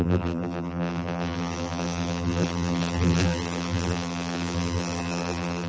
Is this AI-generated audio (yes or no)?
yes